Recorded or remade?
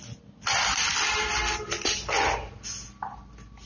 recorded